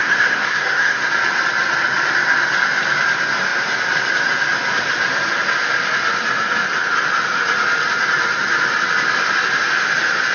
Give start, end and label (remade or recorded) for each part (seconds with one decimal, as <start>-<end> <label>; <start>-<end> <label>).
0.0-1.1 remade; 1.1-10.3 recorded